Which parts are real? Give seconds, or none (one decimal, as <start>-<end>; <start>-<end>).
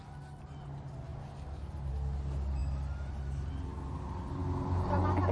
0.0-5.3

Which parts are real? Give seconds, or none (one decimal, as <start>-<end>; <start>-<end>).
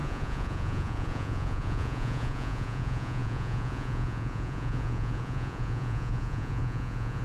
none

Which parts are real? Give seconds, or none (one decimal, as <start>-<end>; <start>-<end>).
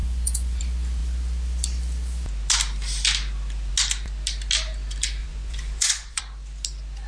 0.6-5.2; 6.2-7.1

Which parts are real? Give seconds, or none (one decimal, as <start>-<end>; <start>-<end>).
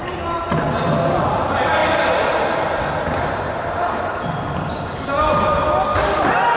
0.0-6.6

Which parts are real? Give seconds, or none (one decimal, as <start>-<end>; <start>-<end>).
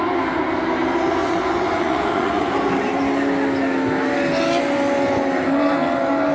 0.0-1.2; 2.5-6.3